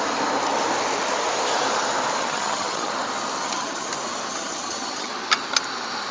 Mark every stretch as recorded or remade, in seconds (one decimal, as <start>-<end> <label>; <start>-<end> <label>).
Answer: 0.0-2.2 recorded; 2.2-2.9 remade; 2.9-3.4 recorded; 3.4-3.9 remade; 3.9-4.3 recorded; 4.3-5.1 remade; 5.1-6.1 recorded